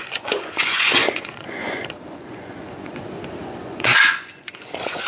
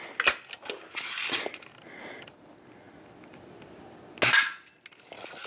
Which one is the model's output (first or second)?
first